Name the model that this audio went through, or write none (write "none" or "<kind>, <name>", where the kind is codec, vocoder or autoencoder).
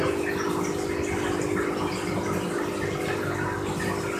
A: none